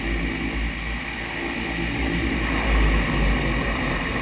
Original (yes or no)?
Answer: yes